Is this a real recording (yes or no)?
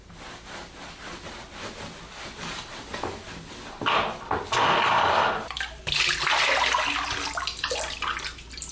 yes